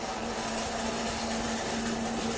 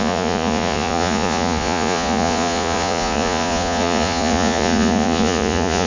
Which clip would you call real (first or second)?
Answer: first